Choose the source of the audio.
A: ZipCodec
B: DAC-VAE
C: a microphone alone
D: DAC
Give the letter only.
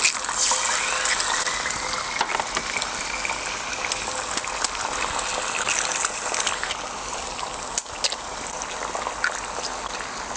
C